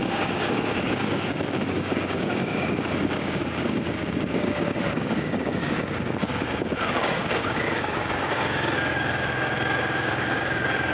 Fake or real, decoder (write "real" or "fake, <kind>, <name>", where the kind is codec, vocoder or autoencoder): fake, codec, DAC